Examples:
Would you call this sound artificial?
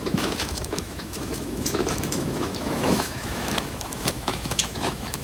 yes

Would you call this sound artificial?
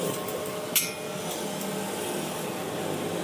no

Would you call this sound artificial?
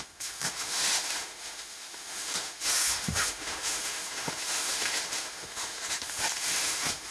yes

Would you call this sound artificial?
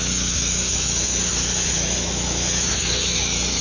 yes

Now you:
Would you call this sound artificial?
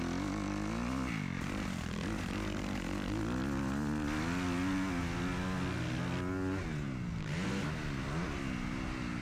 no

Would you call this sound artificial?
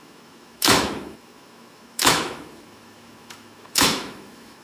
yes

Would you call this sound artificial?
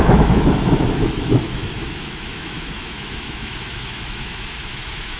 yes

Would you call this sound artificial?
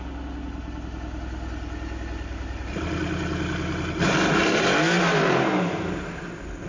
no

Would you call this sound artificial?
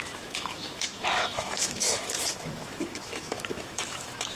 yes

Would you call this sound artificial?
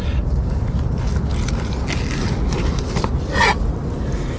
no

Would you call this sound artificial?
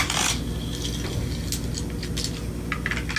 no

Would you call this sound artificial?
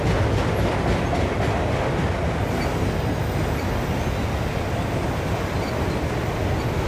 no